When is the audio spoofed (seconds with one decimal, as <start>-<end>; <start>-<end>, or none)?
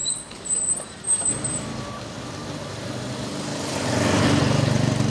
0.0-3.1; 3.5-4.4